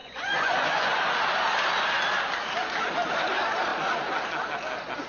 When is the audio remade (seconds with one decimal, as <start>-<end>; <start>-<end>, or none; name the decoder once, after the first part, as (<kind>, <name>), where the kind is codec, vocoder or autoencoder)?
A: 0.0-1.0 (vocoder, Vocos)